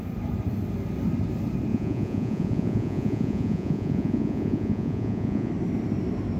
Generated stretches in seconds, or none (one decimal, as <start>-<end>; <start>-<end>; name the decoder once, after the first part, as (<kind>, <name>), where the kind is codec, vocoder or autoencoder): 1.7-5.5 (vocoder, Vocos)